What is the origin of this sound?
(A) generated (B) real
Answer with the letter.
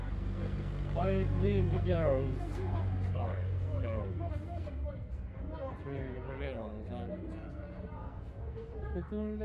A